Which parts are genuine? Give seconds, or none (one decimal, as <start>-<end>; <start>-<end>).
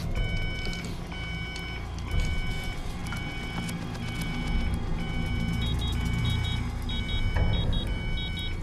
0.0-8.6